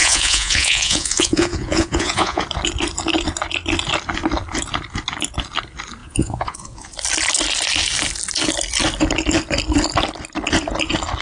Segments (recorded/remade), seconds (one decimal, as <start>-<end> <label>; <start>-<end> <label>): 0.0-2.4 remade; 2.4-6.0 recorded; 6.0-6.9 remade; 6.9-11.2 recorded